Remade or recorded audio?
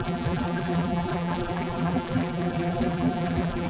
remade